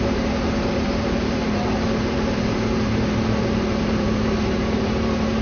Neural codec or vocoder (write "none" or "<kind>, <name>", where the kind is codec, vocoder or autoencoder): vocoder, BigVGAN v2